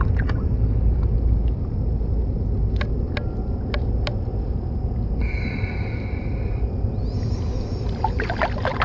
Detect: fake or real real